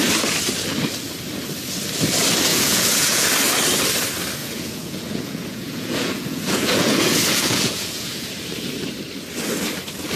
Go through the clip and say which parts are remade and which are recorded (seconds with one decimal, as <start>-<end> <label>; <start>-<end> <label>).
0.0-2.5 recorded; 2.5-3.2 remade; 3.2-4.4 recorded; 4.4-8.3 remade; 8.3-10.2 recorded